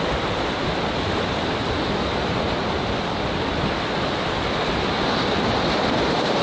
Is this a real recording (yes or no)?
yes